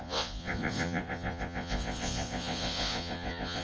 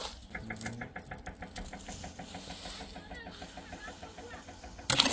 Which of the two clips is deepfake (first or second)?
first